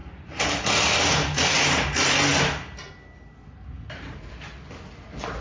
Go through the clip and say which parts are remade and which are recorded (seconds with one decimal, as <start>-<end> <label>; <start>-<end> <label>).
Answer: 0.0-5.4 recorded